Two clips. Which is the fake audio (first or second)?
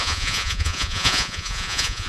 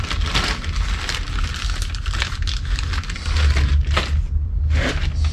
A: first